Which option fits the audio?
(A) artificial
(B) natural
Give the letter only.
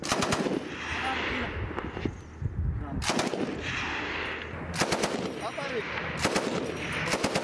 B